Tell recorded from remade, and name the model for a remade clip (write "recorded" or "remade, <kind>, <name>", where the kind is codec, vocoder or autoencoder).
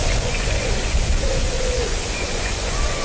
remade, vocoder, Vocos